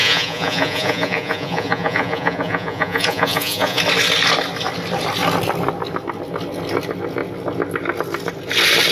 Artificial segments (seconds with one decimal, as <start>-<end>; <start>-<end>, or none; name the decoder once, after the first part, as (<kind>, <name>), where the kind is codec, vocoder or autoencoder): 0.0-3.8 (vocoder, Vocos)